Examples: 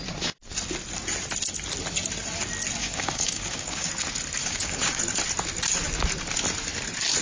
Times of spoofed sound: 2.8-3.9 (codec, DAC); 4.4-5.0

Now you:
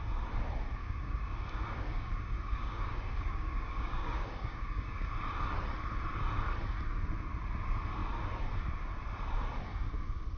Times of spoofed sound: 0.8-5.1 (codec, DAC)

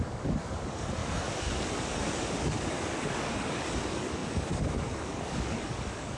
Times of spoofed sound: 0.0-6.2 (codec, DAC)

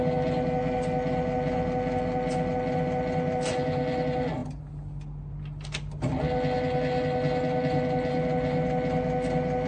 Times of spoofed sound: none

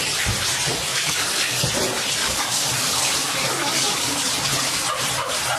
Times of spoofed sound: 0.9-1.7 (codec, DAC); 2.2-4.3

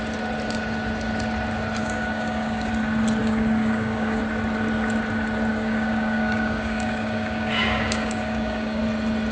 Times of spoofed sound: 1.8-2.7 (codec, DAC); 3.2-4.2; 5.5-8.8